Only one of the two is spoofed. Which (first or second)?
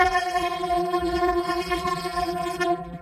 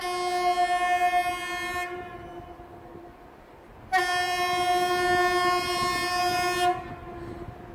first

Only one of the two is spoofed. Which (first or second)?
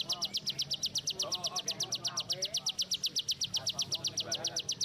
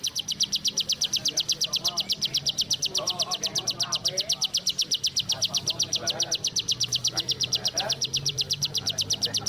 second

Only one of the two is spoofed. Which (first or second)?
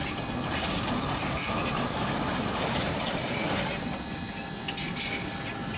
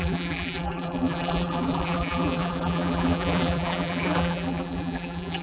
second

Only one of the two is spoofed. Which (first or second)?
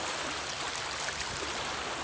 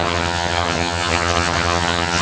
second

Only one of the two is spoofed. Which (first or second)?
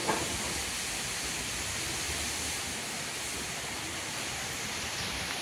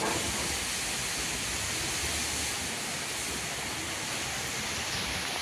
first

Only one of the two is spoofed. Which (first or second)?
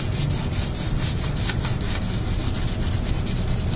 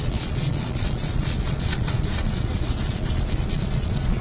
second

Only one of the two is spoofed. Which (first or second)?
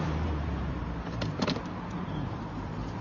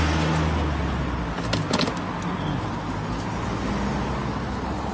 first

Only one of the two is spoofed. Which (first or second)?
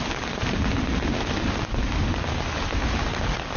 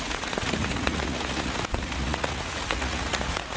second